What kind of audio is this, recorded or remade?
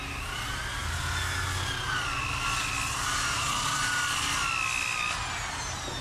recorded